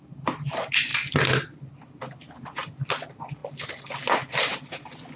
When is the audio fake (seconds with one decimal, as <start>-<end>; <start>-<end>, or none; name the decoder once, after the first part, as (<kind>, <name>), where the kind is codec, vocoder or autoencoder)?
none